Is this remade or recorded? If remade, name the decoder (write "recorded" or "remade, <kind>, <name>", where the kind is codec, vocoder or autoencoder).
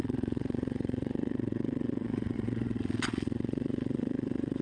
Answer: remade, vocoder, Vocos